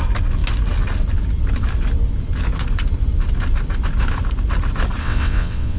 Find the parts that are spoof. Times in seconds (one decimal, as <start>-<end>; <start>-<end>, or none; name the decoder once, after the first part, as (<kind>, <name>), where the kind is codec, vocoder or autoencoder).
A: 5.0-5.8 (vocoder, WaveNeXt)